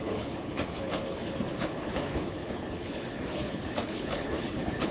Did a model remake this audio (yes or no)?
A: yes